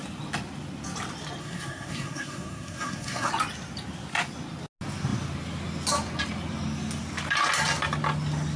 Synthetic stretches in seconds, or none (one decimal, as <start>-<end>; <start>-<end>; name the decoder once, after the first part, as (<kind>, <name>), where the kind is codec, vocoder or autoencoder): 1.4-3.3 (codec, SNAC)